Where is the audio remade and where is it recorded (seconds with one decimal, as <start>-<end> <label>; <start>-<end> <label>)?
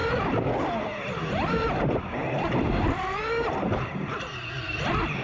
0.0-5.2 recorded